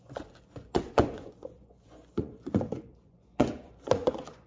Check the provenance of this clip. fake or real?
fake